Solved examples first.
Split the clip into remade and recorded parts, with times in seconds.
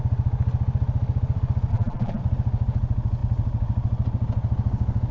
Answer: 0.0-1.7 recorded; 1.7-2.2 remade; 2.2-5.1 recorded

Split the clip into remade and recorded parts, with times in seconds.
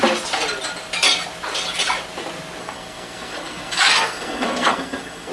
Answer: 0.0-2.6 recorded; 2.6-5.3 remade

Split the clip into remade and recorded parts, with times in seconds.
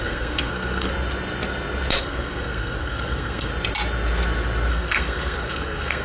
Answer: 0.0-0.9 remade; 0.9-2.0 recorded; 2.0-3.5 remade; 3.5-4.7 recorded; 4.7-6.0 remade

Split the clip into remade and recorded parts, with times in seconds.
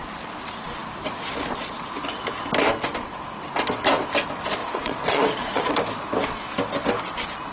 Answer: 0.0-4.6 recorded; 4.6-5.7 remade; 5.7-7.5 recorded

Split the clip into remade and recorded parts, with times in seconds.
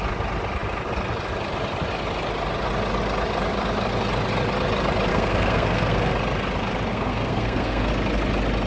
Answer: 0.0-5.1 recorded; 5.1-6.1 remade; 6.1-6.9 recorded; 6.9-7.9 remade; 7.9-8.7 recorded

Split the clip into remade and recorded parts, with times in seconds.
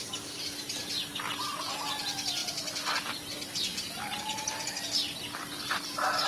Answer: 0.0-6.3 recorded